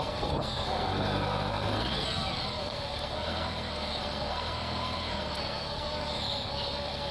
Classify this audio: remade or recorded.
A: remade